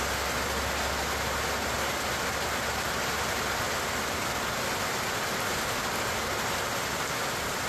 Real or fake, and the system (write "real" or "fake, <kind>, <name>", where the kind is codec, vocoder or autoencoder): real